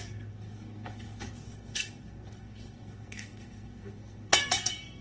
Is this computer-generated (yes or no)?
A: yes